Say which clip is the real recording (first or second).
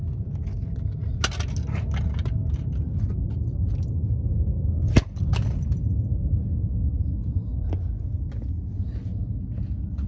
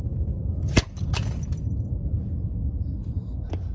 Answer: first